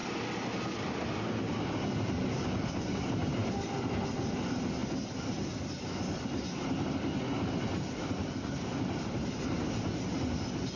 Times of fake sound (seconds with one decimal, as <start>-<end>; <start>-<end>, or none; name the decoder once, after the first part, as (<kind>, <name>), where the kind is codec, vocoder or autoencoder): none